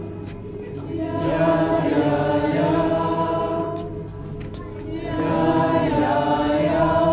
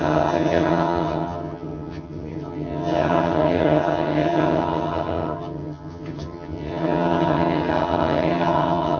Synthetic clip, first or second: second